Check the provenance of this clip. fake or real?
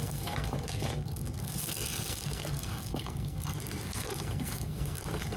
fake